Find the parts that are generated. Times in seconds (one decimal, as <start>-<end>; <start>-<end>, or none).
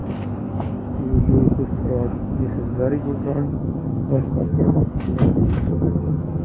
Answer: 3.3-4.8; 5.7-6.4